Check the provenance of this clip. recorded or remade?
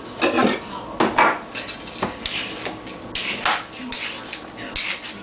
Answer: recorded